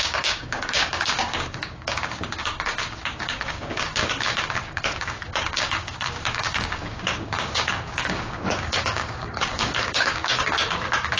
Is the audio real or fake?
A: fake